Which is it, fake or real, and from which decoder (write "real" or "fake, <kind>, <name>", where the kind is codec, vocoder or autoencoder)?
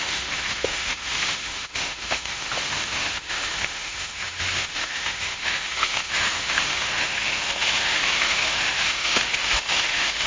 fake, autoencoder, DAC-VAE